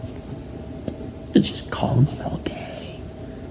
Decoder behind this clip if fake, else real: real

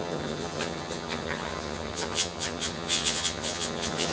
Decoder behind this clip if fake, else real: fake, vocoder, HiFi-GAN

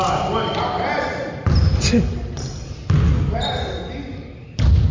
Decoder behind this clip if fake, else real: real